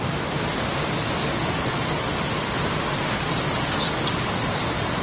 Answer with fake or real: real